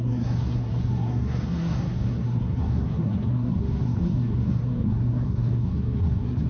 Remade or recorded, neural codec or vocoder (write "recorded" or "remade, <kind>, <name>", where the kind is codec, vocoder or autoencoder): remade, codec, SNAC